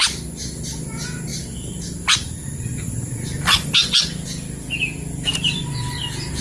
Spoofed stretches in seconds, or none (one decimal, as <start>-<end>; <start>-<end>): 1.3-3.7; 5.2-5.7

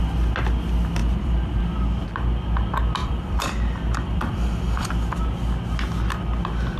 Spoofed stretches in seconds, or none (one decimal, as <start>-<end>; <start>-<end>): 1.0-1.6; 3.0-5.2

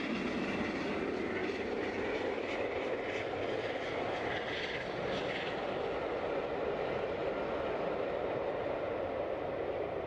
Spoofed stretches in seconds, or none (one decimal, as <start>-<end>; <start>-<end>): none

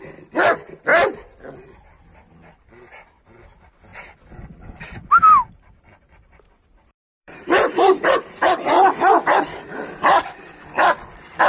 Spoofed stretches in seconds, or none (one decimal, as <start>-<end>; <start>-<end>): 6.7-10.2

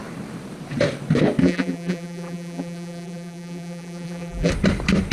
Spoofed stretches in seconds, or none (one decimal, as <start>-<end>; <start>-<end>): 1.4-4.5

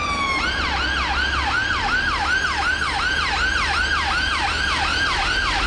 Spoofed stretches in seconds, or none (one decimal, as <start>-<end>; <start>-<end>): none